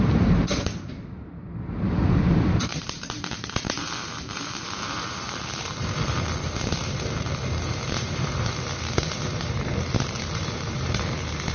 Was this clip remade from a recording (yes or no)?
yes